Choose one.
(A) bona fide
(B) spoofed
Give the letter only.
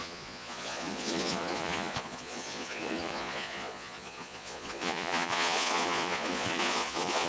B